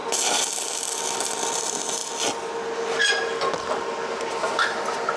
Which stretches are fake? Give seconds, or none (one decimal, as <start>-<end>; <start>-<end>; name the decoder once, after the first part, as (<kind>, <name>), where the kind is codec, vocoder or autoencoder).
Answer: none